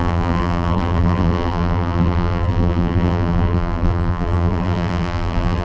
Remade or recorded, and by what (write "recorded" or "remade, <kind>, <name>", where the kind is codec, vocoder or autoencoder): remade, vocoder, BigVGAN v2